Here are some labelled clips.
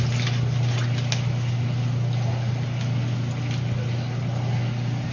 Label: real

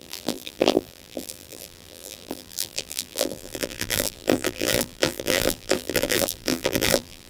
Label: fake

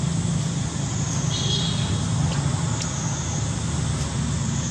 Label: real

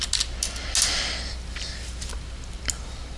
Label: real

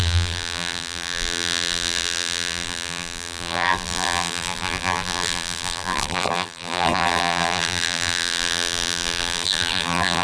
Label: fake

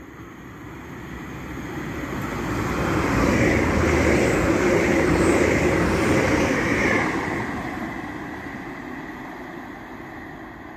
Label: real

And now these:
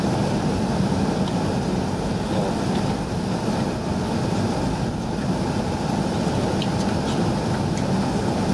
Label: real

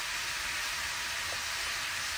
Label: real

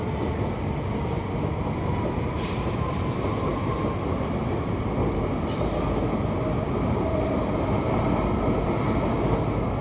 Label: real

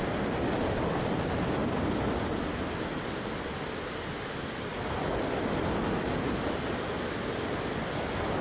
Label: real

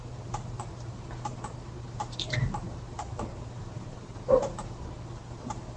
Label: fake